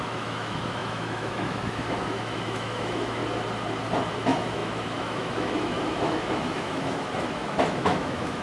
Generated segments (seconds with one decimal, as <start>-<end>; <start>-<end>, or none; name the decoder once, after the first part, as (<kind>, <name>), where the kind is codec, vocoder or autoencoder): 0.0-3.2 (autoencoder, DAC-VAE); 4.1-8.4